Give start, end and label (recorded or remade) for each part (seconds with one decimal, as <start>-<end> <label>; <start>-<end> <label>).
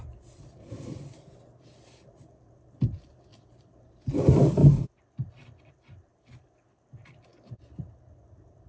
0.0-4.6 remade; 4.6-5.7 recorded; 5.7-7.3 remade; 7.3-8.2 recorded; 8.2-8.7 remade